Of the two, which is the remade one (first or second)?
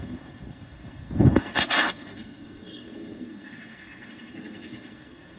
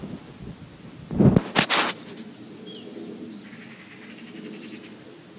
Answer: first